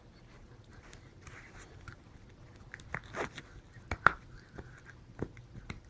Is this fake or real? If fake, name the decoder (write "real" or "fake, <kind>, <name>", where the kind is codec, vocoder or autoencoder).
real